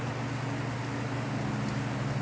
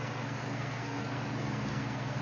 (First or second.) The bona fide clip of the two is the first